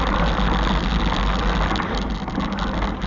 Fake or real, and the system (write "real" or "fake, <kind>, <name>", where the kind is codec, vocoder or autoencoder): real